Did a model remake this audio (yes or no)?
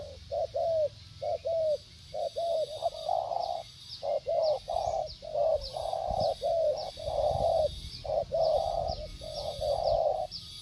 no